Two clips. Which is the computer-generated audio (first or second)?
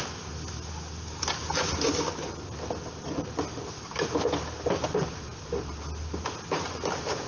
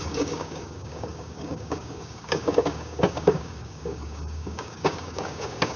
second